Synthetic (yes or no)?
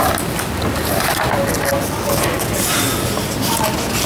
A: no